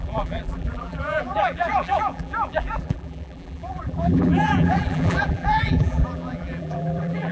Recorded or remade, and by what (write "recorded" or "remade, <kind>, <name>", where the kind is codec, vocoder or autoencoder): remade, vocoder, BigVGAN v2